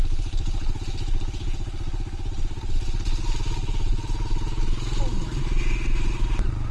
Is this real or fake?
real